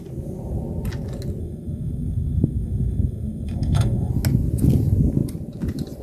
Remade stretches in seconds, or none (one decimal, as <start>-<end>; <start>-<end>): 1.4-4.1